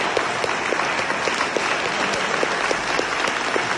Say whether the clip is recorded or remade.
recorded